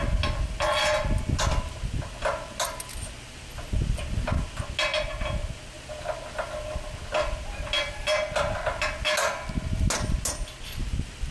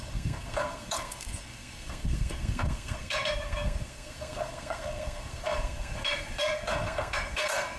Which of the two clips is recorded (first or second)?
first